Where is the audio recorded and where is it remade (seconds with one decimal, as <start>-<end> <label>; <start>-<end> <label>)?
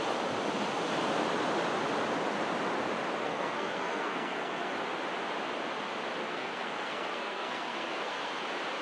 0.0-3.2 recorded; 3.2-4.8 remade; 4.8-6.2 recorded; 6.2-8.3 remade; 8.3-8.8 recorded